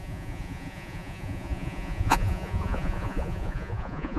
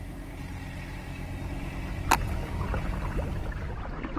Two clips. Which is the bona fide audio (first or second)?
second